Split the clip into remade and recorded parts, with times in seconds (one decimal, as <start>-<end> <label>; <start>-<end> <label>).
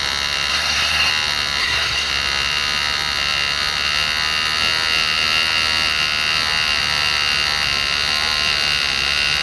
0.0-0.5 recorded; 0.5-1.1 remade; 1.1-1.6 recorded; 1.6-2.1 remade; 2.1-9.4 recorded